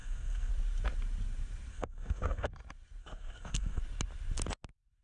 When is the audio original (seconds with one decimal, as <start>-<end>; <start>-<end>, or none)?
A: 0.5-1.7; 2.5-3.0; 3.8-5.0